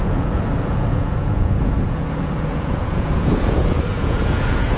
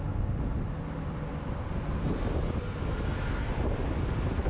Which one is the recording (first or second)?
second